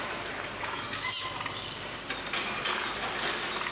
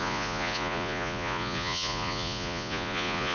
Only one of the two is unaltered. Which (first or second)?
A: first